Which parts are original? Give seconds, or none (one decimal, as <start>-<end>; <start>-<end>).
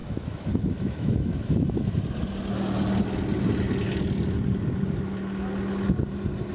2.0-6.5